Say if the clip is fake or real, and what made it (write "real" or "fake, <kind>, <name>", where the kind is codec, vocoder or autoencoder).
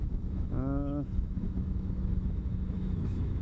fake, autoencoder, DAC-VAE